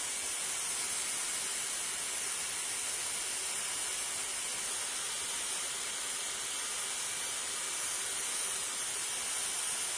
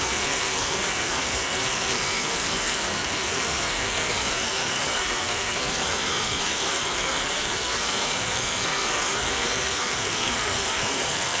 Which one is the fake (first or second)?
second